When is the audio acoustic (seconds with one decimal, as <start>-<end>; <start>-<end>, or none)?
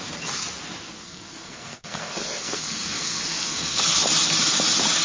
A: 0.0-1.0; 3.8-5.0